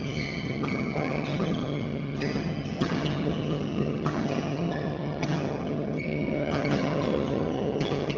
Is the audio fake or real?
fake